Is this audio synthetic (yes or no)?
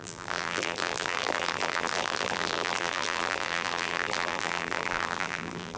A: yes